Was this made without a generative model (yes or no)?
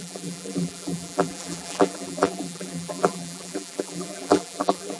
no